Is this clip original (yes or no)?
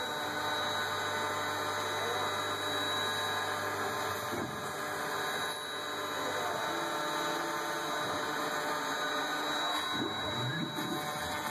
yes